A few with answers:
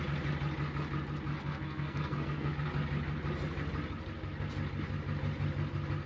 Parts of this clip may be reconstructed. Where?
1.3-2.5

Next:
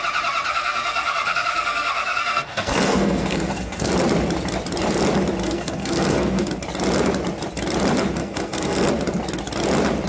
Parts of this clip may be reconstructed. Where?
0.5-3.9; 5.4-6.5; 8.2-8.9